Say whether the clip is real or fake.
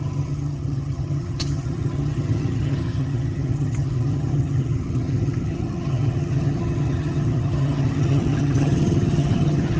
fake